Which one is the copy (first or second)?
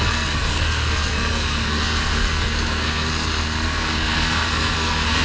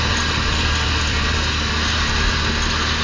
first